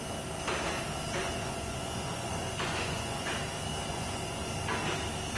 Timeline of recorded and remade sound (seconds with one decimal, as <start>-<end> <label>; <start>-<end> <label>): 0.0-1.2 recorded; 1.2-3.3 remade; 3.3-3.9 recorded; 3.9-4.5 remade; 4.5-5.4 recorded